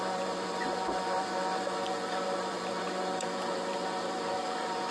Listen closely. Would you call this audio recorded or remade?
remade